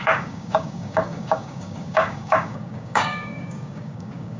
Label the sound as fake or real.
fake